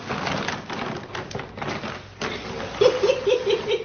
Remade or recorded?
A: recorded